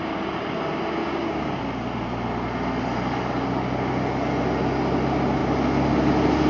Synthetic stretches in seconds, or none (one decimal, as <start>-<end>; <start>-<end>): 1.0-1.6